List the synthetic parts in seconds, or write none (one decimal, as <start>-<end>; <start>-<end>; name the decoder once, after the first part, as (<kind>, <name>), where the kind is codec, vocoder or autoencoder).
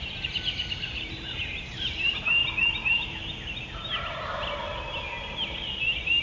0.0-2.4 (vocoder, BigVGAN v2)